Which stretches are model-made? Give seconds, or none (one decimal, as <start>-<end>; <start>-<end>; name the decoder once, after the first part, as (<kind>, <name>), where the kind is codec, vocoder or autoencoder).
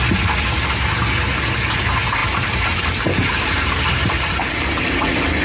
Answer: 2.2-5.4 (vocoder, BigVGAN v2)